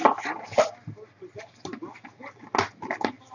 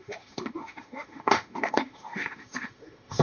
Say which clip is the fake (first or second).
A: second